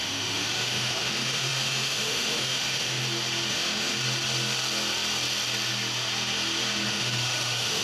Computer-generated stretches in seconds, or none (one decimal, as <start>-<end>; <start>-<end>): 0.0-3.0; 3.5-3.9; 6.9-7.8